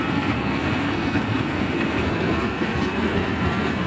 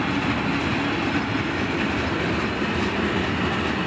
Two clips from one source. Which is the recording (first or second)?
second